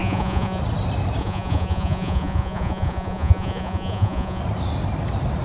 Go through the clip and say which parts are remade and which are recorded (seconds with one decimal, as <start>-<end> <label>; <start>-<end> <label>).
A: 0.0-0.6 remade; 0.6-1.2 recorded; 1.2-4.4 remade; 4.4-5.4 recorded